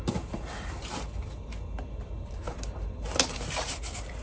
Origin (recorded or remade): recorded